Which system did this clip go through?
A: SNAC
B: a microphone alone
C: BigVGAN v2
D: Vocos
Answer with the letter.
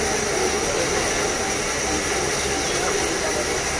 B